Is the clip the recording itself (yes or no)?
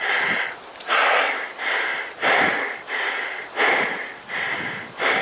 yes